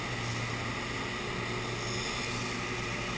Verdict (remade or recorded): recorded